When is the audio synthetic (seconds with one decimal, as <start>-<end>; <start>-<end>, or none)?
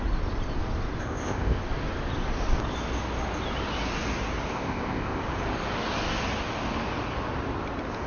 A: 1.0-1.6; 4.5-5.2